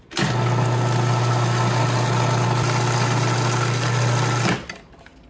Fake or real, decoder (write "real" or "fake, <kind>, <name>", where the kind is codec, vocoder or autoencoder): real